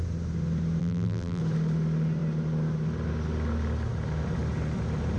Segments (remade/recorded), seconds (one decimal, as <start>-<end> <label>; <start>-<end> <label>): 0.0-0.8 recorded; 0.8-1.4 remade; 1.4-5.2 recorded